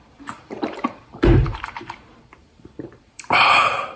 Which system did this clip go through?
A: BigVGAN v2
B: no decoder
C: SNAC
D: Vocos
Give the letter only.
A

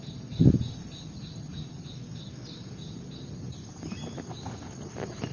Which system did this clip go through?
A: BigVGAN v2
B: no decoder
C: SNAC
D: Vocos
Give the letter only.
B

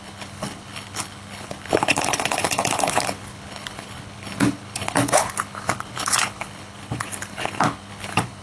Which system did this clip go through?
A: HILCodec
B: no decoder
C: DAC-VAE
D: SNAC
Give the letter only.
A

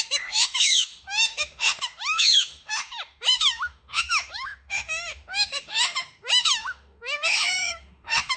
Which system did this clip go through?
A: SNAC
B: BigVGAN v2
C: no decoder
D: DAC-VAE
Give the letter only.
D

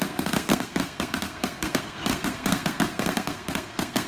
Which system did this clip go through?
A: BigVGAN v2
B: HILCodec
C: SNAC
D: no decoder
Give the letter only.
C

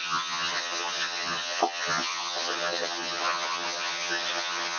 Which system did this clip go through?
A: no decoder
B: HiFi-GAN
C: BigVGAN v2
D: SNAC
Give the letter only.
B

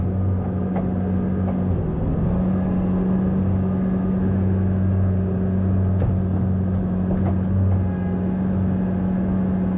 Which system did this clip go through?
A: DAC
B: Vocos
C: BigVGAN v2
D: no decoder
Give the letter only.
D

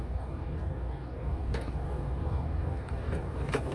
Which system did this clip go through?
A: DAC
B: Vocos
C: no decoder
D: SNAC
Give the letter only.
A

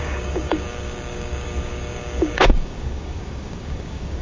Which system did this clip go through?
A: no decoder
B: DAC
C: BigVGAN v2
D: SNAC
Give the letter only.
B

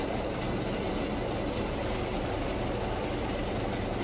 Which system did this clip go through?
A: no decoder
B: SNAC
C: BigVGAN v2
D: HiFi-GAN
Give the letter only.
A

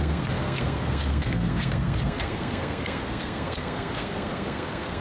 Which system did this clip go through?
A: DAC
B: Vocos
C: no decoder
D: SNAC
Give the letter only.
D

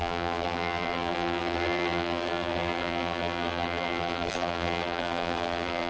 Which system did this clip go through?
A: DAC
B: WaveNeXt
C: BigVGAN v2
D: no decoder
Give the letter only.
C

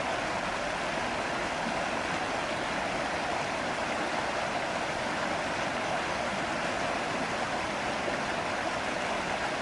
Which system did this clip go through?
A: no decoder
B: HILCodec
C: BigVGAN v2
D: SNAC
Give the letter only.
A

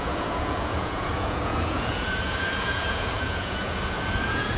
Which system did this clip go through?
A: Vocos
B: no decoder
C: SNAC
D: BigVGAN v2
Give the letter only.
A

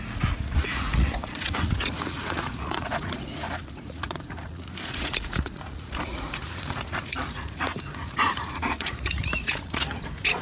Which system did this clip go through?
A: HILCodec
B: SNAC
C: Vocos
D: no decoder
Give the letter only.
C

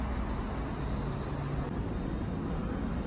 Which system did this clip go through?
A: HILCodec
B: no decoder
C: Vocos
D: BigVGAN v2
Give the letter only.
B